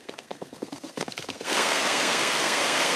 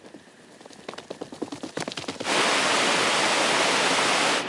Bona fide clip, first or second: second